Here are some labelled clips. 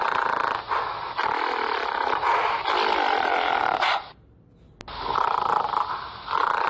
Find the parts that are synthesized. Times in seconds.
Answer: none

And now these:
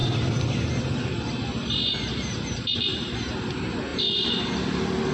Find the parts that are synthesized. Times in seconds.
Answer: 2.9-3.5 (vocoder, BigVGAN v2); 3.9-4.4